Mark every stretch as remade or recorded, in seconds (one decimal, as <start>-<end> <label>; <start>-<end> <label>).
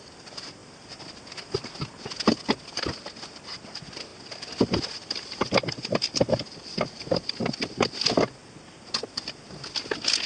0.0-8.4 recorded; 8.4-9.5 remade; 9.5-10.3 recorded